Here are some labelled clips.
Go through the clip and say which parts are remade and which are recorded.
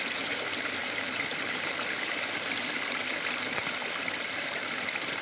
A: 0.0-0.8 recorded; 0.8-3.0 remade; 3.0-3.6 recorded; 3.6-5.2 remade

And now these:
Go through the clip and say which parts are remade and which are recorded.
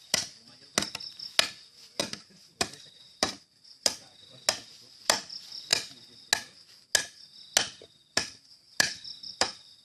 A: 0.0-0.7 remade; 0.7-2.0 recorded; 2.0-4.0 remade; 4.0-4.5 recorded; 4.5-5.7 remade; 5.7-8.1 recorded; 8.1-9.8 remade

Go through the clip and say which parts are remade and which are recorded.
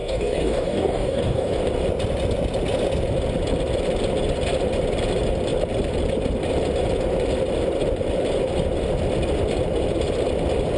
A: 0.0-1.6 remade; 1.6-10.8 recorded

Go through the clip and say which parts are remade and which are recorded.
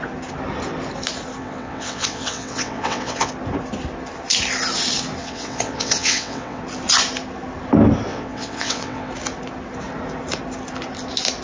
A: 0.0-1.4 recorded; 1.4-3.3 remade; 3.3-5.2 recorded; 5.2-6.6 remade; 6.6-8.1 recorded; 8.1-9.1 remade; 9.1-11.4 recorded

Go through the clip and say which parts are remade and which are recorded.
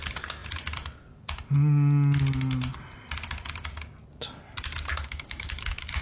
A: 0.0-4.9 recorded; 4.9-6.0 remade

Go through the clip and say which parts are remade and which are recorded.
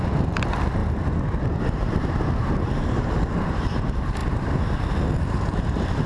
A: 0.0-0.8 remade; 0.8-1.6 recorded; 1.6-4.2 remade; 4.2-5.2 recorded; 5.2-6.1 remade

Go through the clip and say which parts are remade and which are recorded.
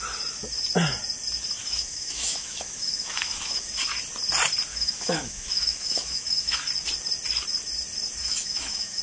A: 0.0-1.6 recorded; 1.6-3.8 remade; 3.8-4.7 recorded; 4.7-6.7 remade; 6.7-8.2 recorded; 8.2-9.0 remade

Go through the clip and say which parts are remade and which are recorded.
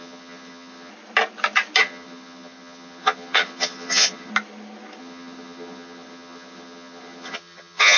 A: 0.0-0.9 remade; 0.9-1.8 recorded; 1.8-4.3 remade; 4.3-5.0 recorded; 5.0-8.0 remade